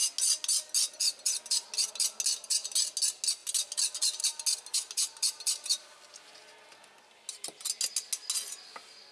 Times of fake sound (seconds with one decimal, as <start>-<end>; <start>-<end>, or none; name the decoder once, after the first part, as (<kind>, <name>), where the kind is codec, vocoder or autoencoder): none

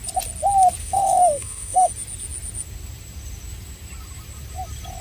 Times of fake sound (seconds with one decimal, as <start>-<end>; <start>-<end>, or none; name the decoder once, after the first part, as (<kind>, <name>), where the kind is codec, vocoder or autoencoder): 0.8-1.9 (autoencoder, DAC-VAE)

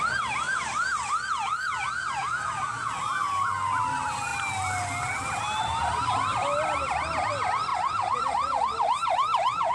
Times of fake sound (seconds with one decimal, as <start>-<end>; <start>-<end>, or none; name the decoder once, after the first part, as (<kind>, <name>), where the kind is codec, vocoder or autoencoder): 7.7-9.7 (vocoder, BigVGAN v2)

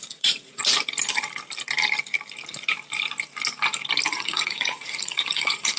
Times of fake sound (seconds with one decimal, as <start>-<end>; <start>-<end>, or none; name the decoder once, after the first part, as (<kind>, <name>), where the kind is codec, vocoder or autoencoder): 0.0-0.6 (vocoder, Vocos); 4.1-5.8

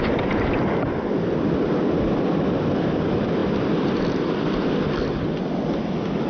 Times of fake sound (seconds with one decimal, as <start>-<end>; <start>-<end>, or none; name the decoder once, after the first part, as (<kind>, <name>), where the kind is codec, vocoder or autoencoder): none

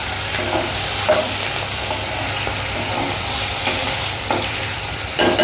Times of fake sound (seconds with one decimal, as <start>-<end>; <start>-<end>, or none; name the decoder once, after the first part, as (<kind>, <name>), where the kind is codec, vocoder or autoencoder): 3.2-5.4 (vocoder, BigVGAN v2)